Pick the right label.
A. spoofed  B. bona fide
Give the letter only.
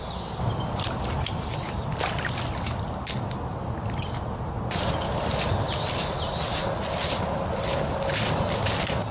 B